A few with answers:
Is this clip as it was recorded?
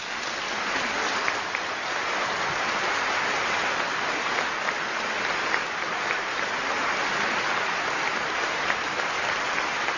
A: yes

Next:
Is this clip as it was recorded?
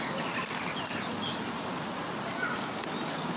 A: yes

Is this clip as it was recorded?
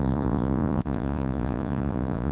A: no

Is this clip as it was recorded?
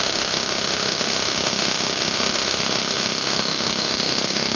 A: no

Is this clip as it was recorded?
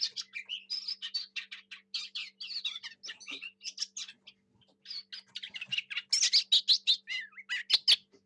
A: yes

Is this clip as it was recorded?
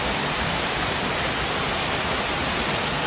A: yes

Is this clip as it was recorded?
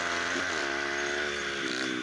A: yes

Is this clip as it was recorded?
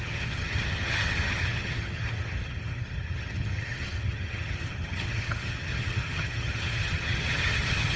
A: no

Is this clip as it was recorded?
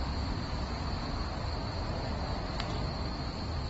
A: yes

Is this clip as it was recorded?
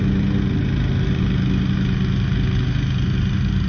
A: yes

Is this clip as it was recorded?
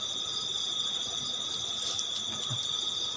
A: yes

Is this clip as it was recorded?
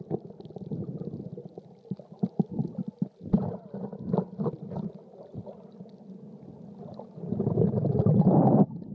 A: yes